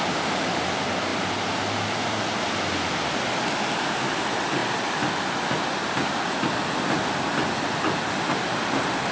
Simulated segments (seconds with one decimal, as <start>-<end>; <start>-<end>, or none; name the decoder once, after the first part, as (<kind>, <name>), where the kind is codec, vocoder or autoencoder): none